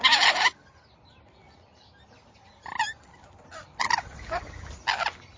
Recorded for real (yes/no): yes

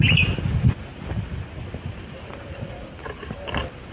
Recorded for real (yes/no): yes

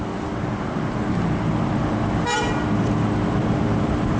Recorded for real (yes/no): yes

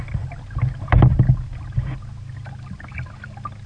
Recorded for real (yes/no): yes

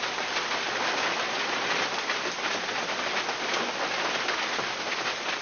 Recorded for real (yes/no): yes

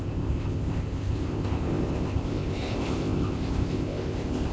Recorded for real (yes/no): no